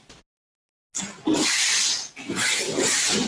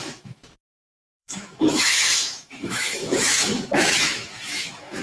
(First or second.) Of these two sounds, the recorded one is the first